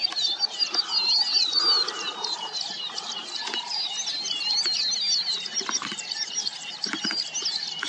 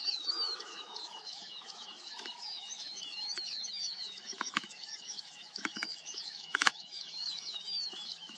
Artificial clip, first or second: second